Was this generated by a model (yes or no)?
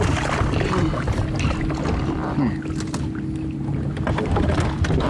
no